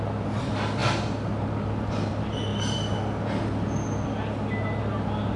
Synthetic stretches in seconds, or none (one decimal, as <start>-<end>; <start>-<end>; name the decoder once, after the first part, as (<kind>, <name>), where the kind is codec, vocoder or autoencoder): none